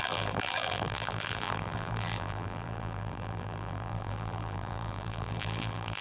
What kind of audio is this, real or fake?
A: fake